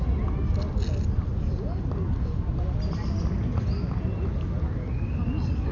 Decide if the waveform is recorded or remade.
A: recorded